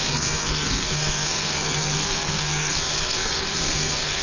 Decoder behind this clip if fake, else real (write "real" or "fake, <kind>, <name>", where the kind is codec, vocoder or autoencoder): fake, codec, SNAC